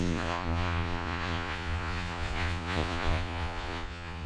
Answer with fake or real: fake